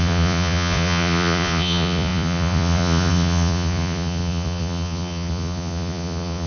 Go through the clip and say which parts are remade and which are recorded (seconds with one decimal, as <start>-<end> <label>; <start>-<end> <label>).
0.0-6.5 remade